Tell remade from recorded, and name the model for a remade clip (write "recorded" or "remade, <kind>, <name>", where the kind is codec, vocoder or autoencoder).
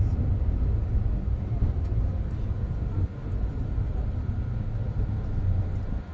recorded